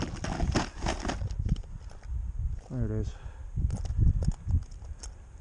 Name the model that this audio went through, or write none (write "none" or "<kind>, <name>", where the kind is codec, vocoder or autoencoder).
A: none